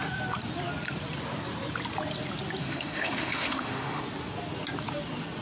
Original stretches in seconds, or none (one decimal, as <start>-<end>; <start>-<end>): 0.0-2.6; 4.0-5.4